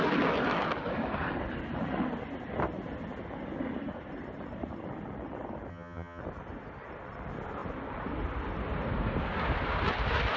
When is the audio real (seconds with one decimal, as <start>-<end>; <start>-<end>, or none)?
0.0-5.7; 6.2-10.4